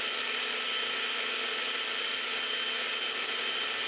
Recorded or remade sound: recorded